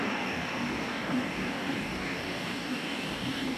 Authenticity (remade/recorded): remade